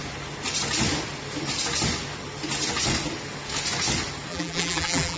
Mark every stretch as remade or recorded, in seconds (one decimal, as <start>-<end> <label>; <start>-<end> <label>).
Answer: 0.0-4.3 recorded; 4.3-5.2 remade